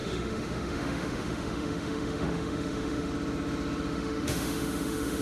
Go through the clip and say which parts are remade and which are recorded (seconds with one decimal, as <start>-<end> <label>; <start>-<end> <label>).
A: 0.0-3.1 remade; 3.1-3.9 recorded; 3.9-5.2 remade